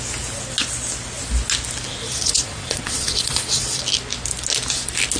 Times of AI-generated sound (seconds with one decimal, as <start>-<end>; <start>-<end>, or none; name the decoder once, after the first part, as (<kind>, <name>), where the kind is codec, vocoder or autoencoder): 2.0-3.8 (vocoder, Vocos)